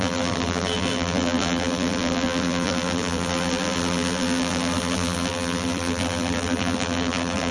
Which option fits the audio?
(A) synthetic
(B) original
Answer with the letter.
A